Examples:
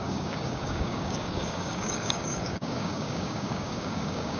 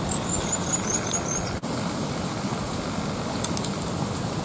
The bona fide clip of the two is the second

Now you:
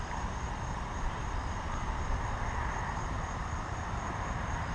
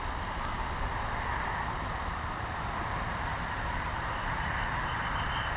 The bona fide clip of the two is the second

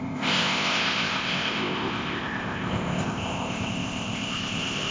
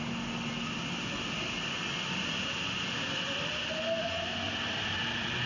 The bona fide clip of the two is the second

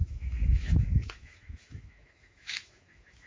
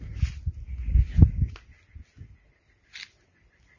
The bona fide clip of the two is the second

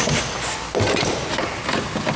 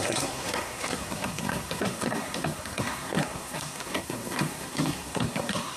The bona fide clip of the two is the first